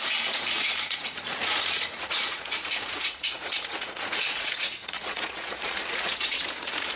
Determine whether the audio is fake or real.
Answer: fake